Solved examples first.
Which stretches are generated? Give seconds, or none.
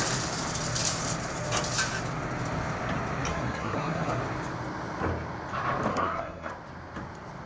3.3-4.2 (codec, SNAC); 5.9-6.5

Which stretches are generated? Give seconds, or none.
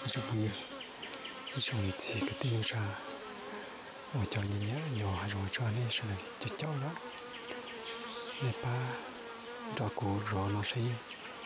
0.0-0.5 (codec, SNAC)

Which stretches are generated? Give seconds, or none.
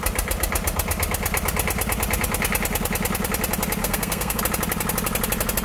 3.8-4.4 (codec, SNAC)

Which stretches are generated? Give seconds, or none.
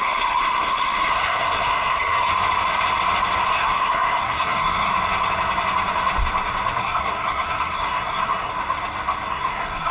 0.0-2.3 (codec, SNAC); 3.5-4.9; 6.8-8.5; 9.3-9.9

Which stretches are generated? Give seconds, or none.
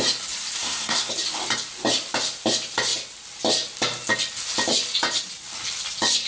0.6-1.1 (codec, SNAC)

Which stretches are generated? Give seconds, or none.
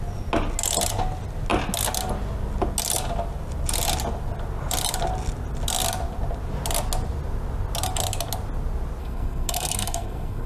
9.0-10.5 (codec, SNAC)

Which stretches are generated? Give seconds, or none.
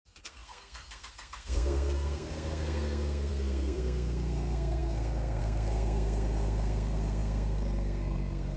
0.0-8.6 (codec, SNAC)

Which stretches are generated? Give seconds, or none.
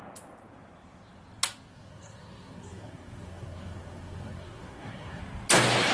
1.7-5.2 (codec, SNAC)